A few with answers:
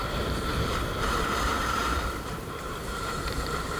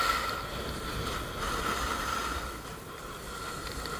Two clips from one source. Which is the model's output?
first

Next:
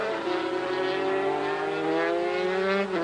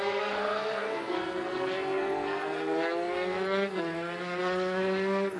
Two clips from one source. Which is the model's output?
second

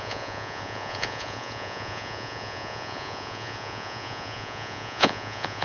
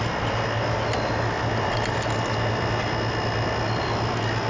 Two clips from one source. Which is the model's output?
first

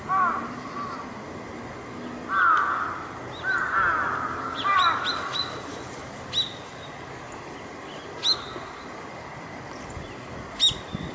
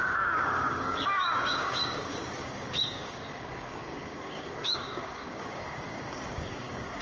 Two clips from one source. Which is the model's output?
second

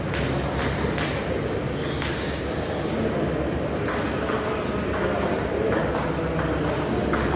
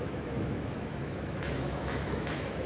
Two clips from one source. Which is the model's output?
second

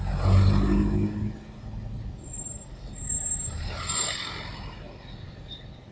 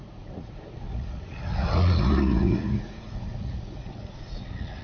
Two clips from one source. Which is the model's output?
second